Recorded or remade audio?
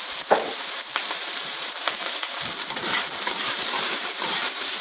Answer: remade